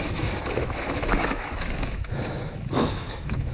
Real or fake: fake